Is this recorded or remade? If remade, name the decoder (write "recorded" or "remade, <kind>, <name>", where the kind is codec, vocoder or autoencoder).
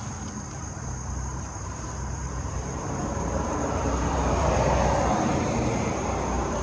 remade, vocoder, BigVGAN v2